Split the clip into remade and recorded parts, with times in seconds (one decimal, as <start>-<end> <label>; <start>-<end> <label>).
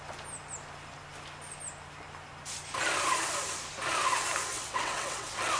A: 0.0-4.5 recorded; 4.5-5.6 remade